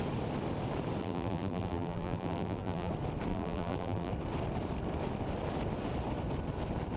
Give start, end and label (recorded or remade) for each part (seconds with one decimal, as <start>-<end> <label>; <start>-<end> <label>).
0.0-1.0 recorded; 1.0-2.9 remade; 2.9-3.3 recorded; 3.3-4.1 remade; 4.1-7.0 recorded